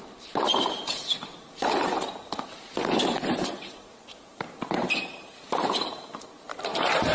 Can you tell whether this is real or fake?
fake